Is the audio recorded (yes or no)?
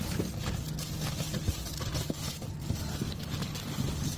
yes